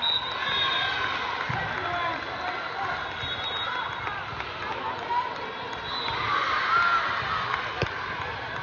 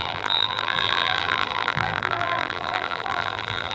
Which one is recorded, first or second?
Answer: first